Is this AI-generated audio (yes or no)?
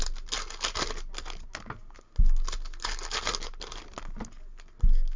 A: no